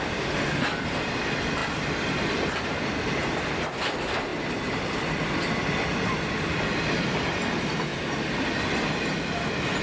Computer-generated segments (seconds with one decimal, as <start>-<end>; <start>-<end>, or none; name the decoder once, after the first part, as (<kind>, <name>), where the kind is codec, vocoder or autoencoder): 0.0-7.9 (vocoder, BigVGAN v2)

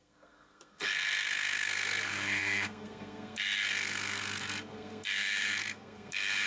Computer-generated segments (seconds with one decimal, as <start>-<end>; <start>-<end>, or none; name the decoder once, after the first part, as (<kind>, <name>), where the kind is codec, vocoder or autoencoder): 0.0-6.5 (codec, SNAC)